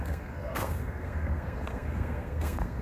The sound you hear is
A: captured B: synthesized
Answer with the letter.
B